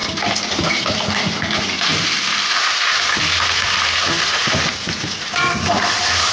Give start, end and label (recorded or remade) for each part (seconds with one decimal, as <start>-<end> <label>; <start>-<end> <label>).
0.0-1.9 recorded; 1.9-2.8 remade; 2.8-6.3 recorded

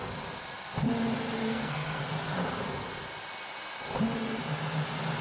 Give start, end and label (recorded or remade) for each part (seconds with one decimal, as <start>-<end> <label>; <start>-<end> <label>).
0.0-1.4 recorded; 1.4-2.0 remade; 2.0-5.2 recorded

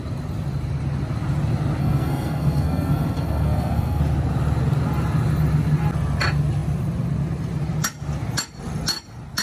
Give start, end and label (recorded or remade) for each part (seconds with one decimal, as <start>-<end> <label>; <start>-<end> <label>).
0.0-1.8 recorded; 1.8-4.0 remade; 4.0-9.4 recorded